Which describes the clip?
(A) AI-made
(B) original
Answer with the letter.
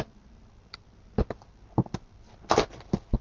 B